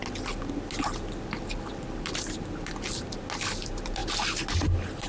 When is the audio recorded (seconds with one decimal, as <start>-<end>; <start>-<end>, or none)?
0.0-5.1